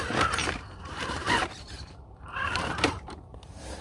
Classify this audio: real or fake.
fake